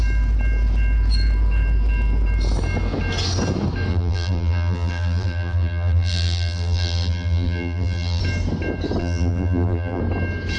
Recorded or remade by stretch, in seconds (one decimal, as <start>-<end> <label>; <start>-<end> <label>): 0.0-3.9 recorded; 3.9-8.2 remade; 8.2-9.0 recorded; 9.0-10.0 remade; 10.0-10.6 recorded